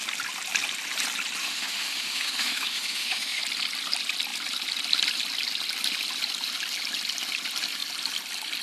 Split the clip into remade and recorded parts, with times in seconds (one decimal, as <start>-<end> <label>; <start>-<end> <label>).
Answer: 0.0-1.4 recorded; 1.4-3.4 remade; 3.4-8.6 recorded